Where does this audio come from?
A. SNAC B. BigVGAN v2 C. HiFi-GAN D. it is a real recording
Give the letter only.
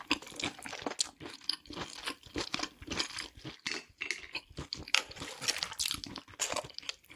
D